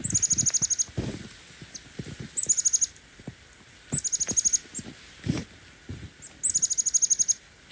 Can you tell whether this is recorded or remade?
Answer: recorded